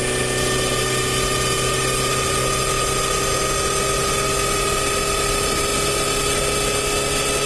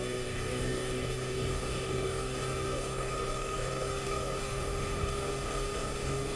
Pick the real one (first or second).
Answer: first